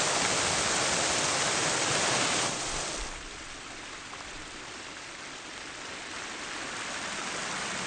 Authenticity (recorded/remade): recorded